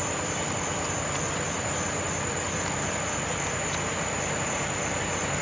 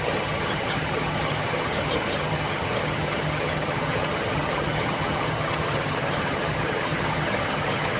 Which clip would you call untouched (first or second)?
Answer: first